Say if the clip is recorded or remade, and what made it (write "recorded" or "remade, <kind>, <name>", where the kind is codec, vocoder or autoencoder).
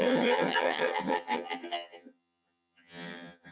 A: remade, vocoder, HiFi-GAN